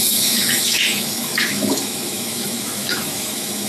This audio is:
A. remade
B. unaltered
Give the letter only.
A